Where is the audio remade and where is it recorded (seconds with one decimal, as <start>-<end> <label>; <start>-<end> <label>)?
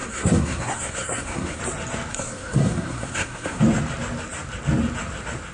0.0-1.6 remade; 1.6-2.1 recorded; 2.1-3.6 remade; 3.6-5.5 recorded